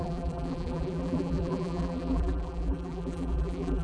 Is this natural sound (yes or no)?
no